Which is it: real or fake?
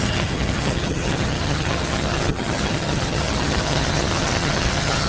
fake